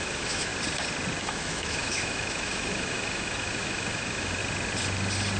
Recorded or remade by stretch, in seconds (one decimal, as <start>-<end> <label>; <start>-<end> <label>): 0.0-0.5 remade; 0.5-1.2 recorded; 1.2-4.4 remade; 4.4-5.4 recorded